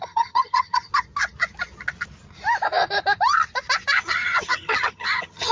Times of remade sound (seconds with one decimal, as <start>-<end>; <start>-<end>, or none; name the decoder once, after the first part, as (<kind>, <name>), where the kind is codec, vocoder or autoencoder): 0.0-0.9 (vocoder, HiFi-GAN); 4.0-5.5